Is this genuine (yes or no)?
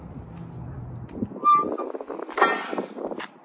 yes